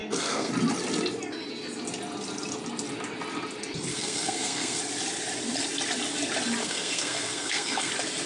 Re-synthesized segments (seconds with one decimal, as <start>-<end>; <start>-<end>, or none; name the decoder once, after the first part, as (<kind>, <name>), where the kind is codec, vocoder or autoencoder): 0.0-0.5 (codec, SNAC); 3.9-4.8; 6.6-7.9